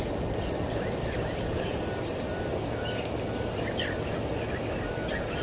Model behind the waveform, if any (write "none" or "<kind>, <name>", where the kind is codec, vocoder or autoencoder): none